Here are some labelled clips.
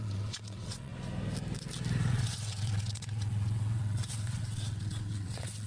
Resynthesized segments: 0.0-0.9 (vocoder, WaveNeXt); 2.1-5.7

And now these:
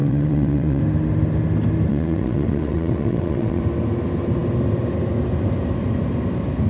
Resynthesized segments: 0.0-0.8 (vocoder, WaveNeXt); 1.9-3.6

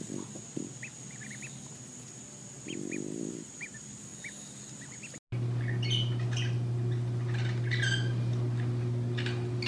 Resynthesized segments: none

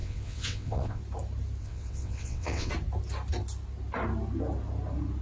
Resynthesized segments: 0.0-1.0 (vocoder, WaveNeXt); 1.6-2.7

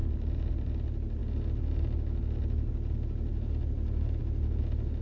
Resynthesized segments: none

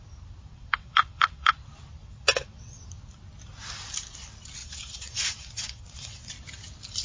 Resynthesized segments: 0.5-1.5 (vocoder, WaveNeXt); 2.0-2.8; 4.6-6.3

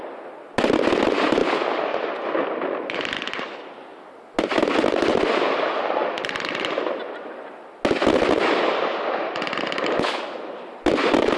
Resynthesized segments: none